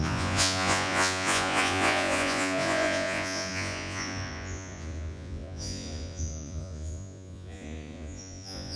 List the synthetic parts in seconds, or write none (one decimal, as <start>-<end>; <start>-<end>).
0.0-8.8